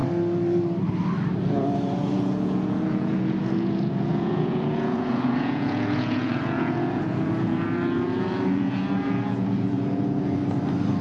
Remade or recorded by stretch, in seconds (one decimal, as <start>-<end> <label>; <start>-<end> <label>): 0.0-1.5 recorded; 1.5-10.4 remade; 10.4-11.0 recorded